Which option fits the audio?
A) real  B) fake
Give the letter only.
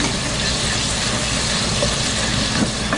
A